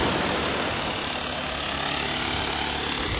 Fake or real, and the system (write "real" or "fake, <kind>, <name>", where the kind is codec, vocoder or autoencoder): real